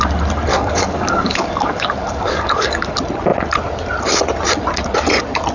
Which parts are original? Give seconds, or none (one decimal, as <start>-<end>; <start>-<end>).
0.0-0.5; 2.9-5.5